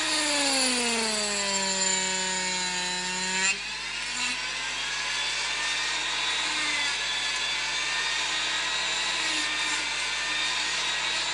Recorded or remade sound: recorded